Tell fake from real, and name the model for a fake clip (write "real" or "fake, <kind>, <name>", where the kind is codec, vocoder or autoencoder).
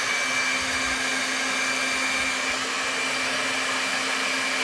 real